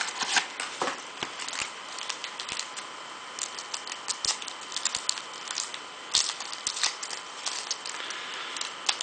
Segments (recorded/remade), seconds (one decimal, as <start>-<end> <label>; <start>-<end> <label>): 0.0-9.0 recorded